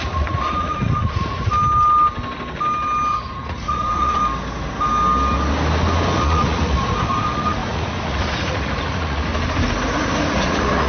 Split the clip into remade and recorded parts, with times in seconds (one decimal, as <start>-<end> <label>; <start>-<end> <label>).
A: 0.0-1.5 remade; 1.5-3.1 recorded; 3.1-4.2 remade; 4.2-6.2 recorded; 6.2-9.3 remade; 9.3-10.0 recorded; 10.0-10.9 remade